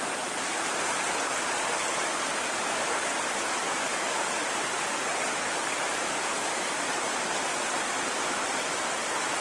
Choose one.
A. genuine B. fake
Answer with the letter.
B